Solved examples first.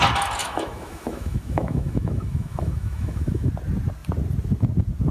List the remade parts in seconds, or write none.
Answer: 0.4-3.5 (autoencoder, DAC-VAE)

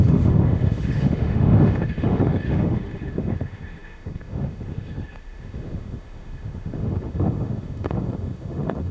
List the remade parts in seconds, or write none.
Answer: 0.0-8.9 (autoencoder, DAC-VAE)

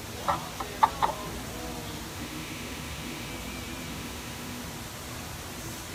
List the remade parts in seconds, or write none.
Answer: 2.1-3.3 (autoencoder, DAC-VAE); 3.9-4.6

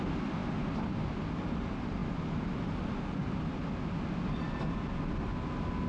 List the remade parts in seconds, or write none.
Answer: none

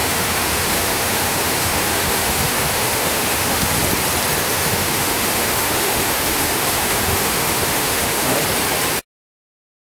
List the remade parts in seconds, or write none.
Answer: 0.0-3.7 (autoencoder, DAC-VAE); 4.5-8.4

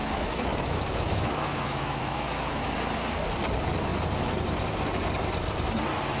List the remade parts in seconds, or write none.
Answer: 0.0-2.7 (autoencoder, DAC-VAE)

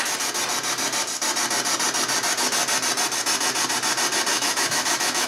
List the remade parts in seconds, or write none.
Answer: 4.3-5.3 (autoencoder, DAC-VAE)